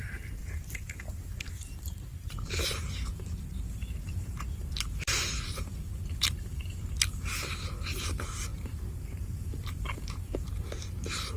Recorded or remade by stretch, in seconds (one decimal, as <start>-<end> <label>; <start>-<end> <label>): 0.0-0.4 remade; 0.4-1.5 recorded; 1.5-11.4 remade